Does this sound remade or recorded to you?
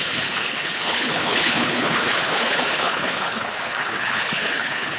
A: remade